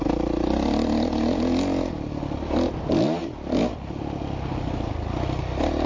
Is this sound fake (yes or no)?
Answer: no